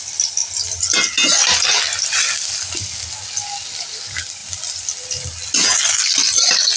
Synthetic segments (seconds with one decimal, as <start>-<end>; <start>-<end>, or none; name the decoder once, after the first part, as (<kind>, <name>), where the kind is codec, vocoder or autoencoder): none